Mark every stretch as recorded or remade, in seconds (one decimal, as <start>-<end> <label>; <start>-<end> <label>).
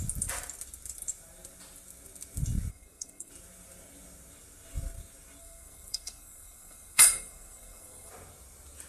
0.0-2.7 recorded; 2.7-3.3 remade; 3.3-5.4 recorded; 5.4-8.1 remade; 8.1-8.9 recorded